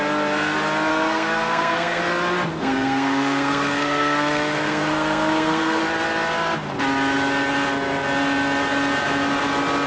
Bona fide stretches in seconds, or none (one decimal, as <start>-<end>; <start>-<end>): 0.0-0.9; 2.0-2.5; 5.8-9.9